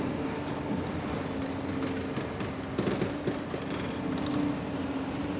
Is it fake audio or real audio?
real